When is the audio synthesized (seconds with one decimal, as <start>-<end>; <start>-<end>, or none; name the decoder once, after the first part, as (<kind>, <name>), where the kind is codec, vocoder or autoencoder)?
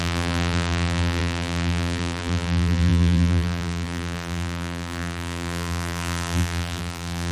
0.0-7.3 (vocoder, BigVGAN v2)